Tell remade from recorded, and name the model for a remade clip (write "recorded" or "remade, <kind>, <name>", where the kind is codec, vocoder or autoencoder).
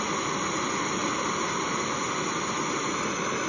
recorded